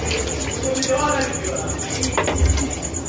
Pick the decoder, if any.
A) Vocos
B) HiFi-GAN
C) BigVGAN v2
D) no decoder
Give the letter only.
D